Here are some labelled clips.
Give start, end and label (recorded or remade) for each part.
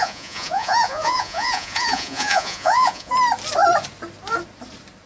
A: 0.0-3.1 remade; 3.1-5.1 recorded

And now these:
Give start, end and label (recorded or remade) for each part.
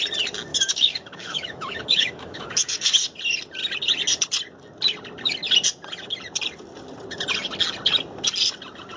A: 0.0-0.5 recorded; 0.5-2.9 remade; 2.9-9.0 recorded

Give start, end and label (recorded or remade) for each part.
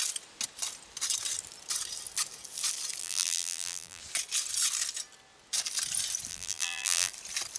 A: 0.0-3.0 recorded; 3.0-4.0 remade; 4.0-6.3 recorded; 6.3-7.1 remade; 7.1-7.6 recorded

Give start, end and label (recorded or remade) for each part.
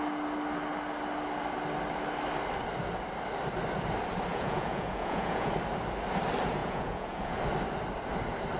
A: 0.0-4.3 recorded; 4.3-5.5 remade; 5.5-6.6 recorded; 6.6-7.4 remade; 7.4-8.6 recorded